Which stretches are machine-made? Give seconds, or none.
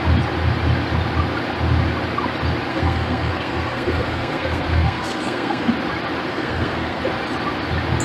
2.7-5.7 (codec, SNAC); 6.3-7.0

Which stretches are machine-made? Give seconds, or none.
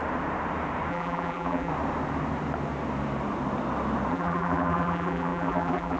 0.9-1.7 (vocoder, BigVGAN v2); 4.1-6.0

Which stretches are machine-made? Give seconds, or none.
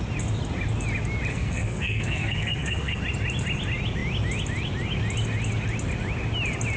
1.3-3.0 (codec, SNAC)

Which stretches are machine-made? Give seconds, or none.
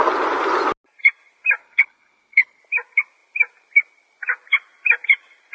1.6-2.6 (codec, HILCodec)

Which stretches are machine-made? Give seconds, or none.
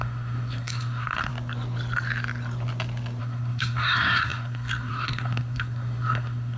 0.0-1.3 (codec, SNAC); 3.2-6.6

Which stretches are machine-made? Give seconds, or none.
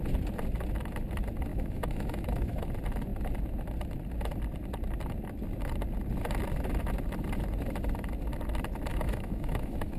1.5-2.7 (autoencoder, DAC-VAE); 8.9-10.0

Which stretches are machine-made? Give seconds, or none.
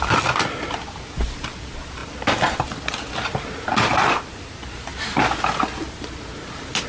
none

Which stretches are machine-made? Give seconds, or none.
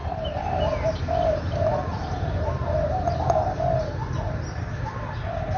none